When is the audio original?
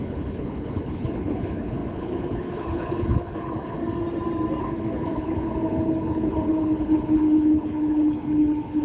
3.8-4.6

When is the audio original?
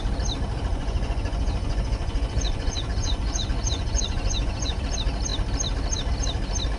0.0-0.7; 4.8-6.8